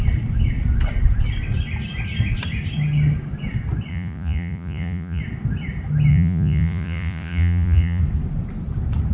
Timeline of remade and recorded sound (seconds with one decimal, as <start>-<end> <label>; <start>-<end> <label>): 0.0-3.9 recorded; 3.9-5.2 remade; 5.2-6.1 recorded; 6.1-8.0 remade; 8.0-9.1 recorded